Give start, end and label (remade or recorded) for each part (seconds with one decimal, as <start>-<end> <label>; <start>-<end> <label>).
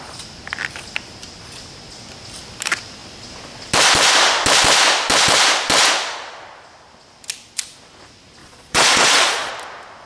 0.0-8.4 recorded; 8.4-9.5 remade; 9.5-10.1 recorded